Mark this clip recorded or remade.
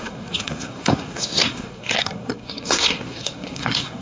remade